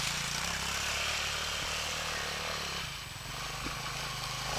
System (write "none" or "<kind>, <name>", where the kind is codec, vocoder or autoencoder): none